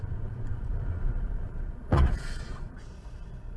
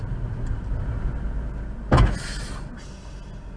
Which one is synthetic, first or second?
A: first